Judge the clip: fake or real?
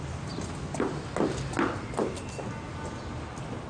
real